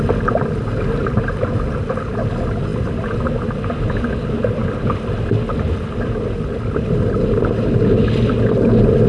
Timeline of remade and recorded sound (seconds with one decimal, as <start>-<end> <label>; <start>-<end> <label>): 0.0-9.1 recorded